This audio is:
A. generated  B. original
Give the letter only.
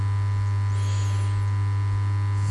B